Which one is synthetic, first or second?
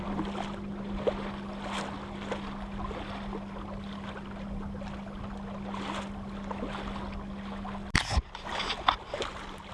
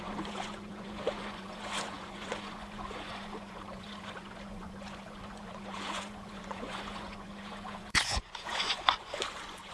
second